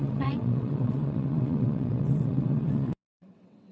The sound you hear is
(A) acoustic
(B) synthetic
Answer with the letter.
B